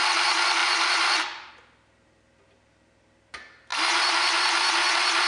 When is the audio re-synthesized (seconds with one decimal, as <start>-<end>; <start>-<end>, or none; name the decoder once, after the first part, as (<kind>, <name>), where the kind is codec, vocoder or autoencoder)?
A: none